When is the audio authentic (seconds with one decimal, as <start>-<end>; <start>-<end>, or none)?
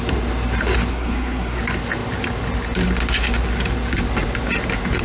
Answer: 0.0-0.9; 1.6-5.0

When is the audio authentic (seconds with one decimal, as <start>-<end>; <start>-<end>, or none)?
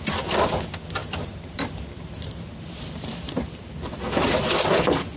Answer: 0.0-1.0; 4.0-5.2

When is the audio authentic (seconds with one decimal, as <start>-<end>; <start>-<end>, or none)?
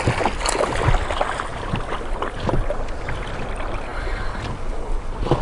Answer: 0.0-5.4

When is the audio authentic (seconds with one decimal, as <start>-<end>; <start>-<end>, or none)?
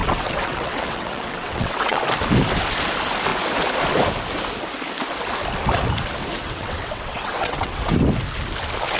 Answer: 2.0-6.4; 7.9-9.0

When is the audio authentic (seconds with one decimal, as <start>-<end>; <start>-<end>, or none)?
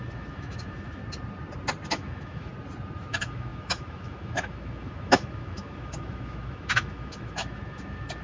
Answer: 1.0-1.9; 2.5-3.1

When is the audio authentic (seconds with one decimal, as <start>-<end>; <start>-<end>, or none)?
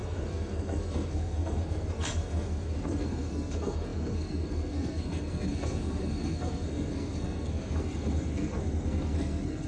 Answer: none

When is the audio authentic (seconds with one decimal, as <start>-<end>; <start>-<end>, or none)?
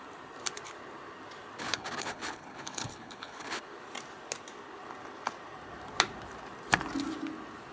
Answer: 0.0-1.6; 3.6-7.7